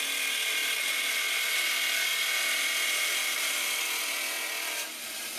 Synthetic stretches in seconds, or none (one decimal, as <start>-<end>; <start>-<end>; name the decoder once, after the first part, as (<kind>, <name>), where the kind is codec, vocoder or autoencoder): 0.6-1.3 (vocoder, BigVGAN v2); 3.2-3.8; 4.5-5.4